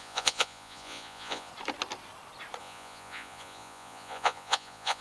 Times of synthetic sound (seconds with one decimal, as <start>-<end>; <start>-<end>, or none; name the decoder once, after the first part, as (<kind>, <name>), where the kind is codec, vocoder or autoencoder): 0.0-1.5 (vocoder, Vocos); 2.6-5.0